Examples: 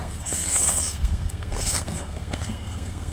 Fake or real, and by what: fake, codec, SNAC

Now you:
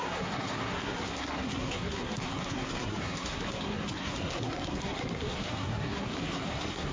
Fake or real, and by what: fake, codec, SNAC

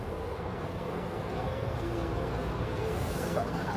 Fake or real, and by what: fake, codec, SNAC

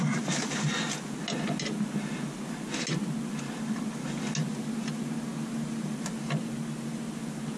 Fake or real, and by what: real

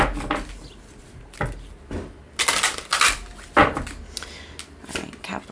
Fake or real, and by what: real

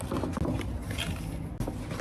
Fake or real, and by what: real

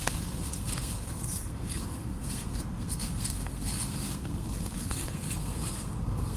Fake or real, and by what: fake, codec, SNAC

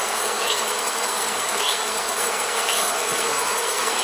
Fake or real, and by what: fake, codec, SNAC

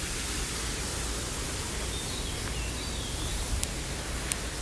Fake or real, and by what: real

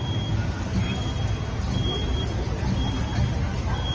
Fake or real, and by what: real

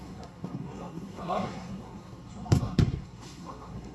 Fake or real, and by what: fake, codec, SNAC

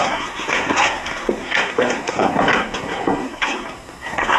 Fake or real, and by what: fake, codec, SNAC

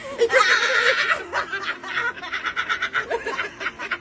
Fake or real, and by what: real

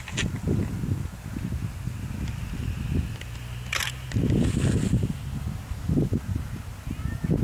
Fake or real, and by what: real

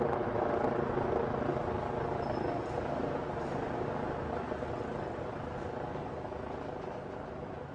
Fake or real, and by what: real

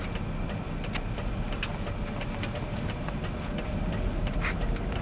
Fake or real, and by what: real